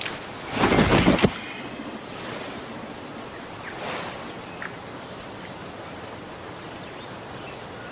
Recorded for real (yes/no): yes